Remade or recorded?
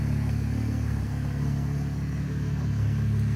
remade